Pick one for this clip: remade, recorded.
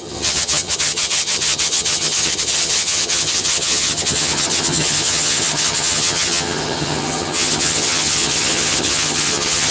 remade